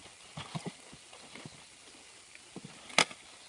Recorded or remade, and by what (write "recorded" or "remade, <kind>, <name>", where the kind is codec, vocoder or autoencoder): recorded